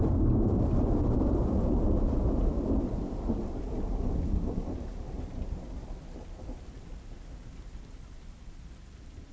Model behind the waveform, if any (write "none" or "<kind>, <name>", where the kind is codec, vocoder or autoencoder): none